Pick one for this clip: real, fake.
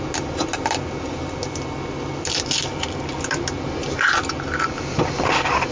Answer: real